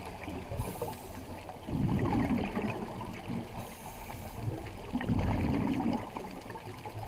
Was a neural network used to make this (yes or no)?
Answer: no